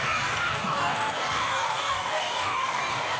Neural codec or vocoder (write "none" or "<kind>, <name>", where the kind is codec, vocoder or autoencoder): codec, DAC